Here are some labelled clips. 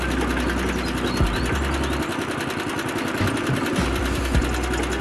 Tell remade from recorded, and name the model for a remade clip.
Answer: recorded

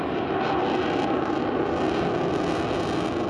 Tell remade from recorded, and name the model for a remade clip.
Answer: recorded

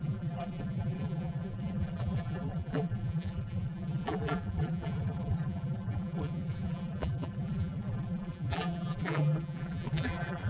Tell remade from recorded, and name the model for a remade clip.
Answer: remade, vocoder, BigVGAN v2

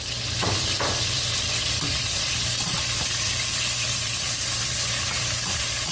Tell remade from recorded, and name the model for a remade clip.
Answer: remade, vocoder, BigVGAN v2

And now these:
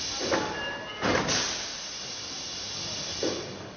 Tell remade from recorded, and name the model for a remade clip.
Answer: recorded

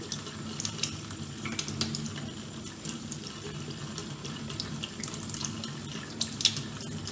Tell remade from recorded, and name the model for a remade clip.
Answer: recorded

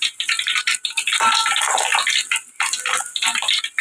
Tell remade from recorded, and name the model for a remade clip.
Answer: recorded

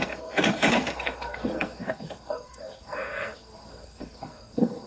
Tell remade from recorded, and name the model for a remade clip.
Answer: remade, codec, SNAC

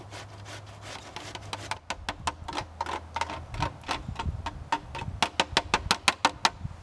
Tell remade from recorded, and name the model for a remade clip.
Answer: recorded